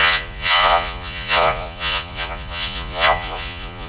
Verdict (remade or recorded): remade